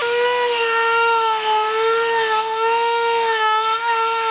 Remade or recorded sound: remade